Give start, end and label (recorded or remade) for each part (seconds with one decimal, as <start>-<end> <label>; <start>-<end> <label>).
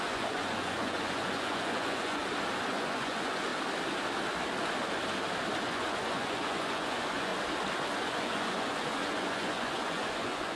0.0-2.2 remade; 2.2-2.7 recorded; 2.7-3.5 remade; 3.5-5.6 recorded; 5.6-7.3 remade; 7.3-8.0 recorded; 8.0-10.6 remade